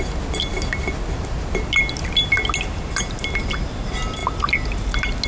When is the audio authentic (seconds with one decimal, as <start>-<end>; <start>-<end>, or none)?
0.0-5.3